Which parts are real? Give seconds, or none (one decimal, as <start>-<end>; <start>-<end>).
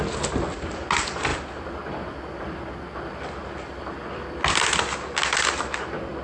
0.0-6.2